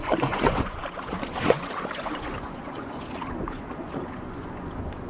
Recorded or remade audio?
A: remade